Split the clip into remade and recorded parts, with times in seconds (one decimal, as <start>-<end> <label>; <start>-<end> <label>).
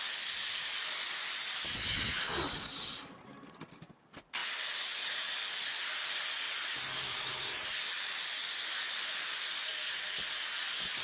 0.0-11.0 recorded